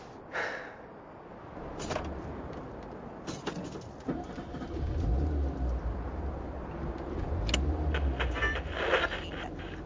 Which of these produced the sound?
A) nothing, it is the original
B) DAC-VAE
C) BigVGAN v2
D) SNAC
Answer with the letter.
A